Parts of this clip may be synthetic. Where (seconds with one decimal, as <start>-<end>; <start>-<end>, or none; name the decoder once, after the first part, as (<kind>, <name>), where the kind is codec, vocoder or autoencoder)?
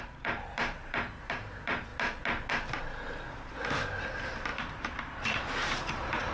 0.0-1.9 (vocoder, BigVGAN v2); 4.0-6.3